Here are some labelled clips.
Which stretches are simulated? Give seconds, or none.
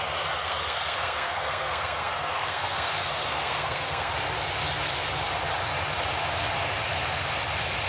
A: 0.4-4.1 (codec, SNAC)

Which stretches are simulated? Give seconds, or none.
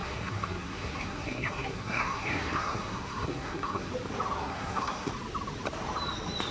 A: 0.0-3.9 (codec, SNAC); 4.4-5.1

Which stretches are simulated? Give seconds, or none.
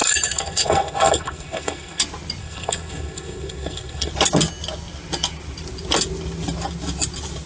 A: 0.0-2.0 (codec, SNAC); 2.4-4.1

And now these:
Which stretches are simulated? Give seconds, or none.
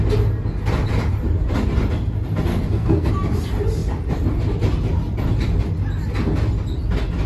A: 2.5-3.1 (codec, SNAC)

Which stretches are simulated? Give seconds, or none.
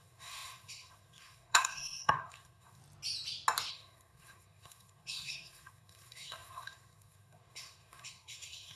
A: 0.0-2.8 (codec, SNAC); 3.7-8.8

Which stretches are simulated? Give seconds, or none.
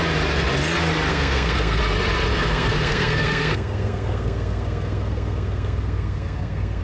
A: 1.1-1.8 (codec, SNAC); 2.3-6.8